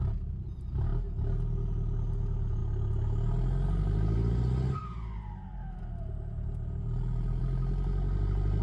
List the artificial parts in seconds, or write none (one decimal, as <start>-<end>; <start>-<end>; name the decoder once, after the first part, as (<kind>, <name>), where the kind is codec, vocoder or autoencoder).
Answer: none